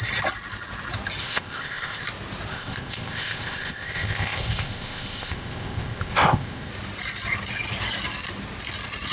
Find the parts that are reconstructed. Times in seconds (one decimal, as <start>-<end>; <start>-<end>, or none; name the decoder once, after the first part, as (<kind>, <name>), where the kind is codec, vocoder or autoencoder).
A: 1.2-2.0 (codec, ZipCodec); 2.5-6.7